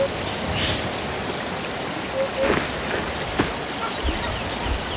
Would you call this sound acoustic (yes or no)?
yes